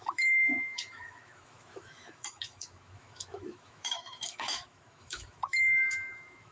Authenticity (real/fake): fake